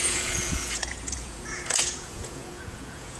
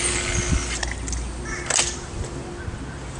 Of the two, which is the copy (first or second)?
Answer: first